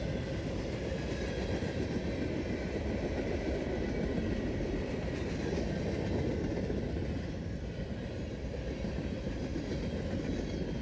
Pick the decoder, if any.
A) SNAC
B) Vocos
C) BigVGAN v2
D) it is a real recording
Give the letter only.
D